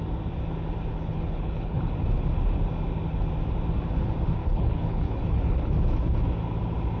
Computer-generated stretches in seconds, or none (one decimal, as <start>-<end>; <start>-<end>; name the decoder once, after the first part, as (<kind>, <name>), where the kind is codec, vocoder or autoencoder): 0.9-1.9 (codec, HILCodec); 4.4-5.7

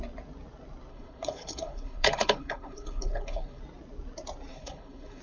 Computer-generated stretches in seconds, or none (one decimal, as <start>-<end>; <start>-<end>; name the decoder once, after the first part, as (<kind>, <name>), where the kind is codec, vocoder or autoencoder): 0.9-3.6 (codec, HILCodec); 4.5-5.2

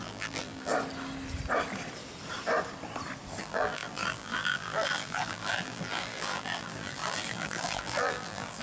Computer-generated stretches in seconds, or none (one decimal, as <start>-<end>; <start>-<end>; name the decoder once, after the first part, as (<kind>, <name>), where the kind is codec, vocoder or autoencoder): 0.0-0.7 (vocoder, BigVGAN v2); 3.4-8.6